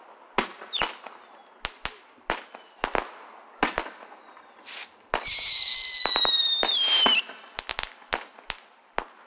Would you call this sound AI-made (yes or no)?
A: no